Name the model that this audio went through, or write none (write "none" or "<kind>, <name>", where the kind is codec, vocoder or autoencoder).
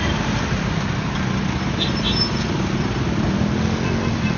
none